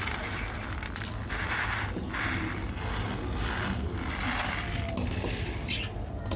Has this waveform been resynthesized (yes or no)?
no